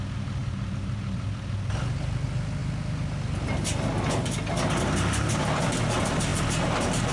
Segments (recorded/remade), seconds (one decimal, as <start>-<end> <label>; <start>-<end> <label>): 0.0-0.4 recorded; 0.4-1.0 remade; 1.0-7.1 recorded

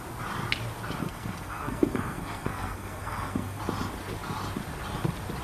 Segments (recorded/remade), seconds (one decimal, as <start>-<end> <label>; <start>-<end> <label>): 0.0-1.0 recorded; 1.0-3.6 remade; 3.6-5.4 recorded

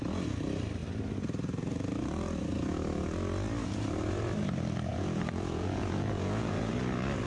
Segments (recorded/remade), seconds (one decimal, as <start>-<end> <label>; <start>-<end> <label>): 0.0-4.9 recorded; 4.9-6.7 remade; 6.7-7.3 recorded